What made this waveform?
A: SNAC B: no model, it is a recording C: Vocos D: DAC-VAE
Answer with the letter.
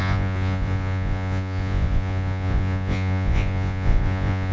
C